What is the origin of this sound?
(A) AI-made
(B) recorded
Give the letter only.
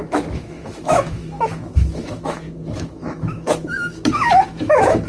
A